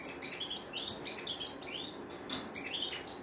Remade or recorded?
recorded